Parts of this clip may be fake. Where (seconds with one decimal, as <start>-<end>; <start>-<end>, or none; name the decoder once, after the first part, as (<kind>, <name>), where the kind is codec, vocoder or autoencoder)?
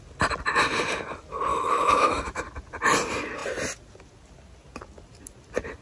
1.5-2.4 (autoencoder, DAC-VAE)